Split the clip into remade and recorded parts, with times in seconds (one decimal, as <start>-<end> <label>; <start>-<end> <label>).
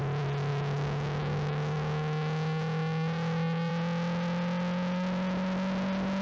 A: 0.0-0.5 recorded; 0.5-3.7 remade; 3.7-6.2 recorded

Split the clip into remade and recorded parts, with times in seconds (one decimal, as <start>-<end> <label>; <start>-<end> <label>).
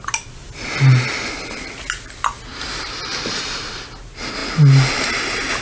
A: 0.0-2.5 recorded; 2.5-3.5 remade; 3.5-5.6 recorded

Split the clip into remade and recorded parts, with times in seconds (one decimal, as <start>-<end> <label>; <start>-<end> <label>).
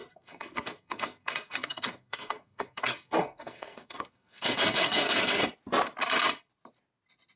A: 0.0-5.4 remade; 5.4-7.4 recorded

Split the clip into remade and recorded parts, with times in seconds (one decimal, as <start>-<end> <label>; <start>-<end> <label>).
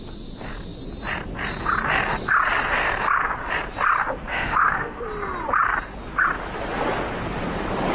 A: 0.0-4.3 recorded; 4.3-5.0 remade; 5.0-7.9 recorded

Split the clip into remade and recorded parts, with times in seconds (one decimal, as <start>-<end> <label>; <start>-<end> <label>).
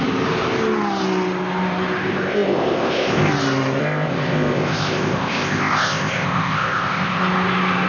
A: 0.0-2.0 recorded; 2.0-3.3 remade; 3.3-3.8 recorded; 3.8-7.2 remade; 7.2-7.9 recorded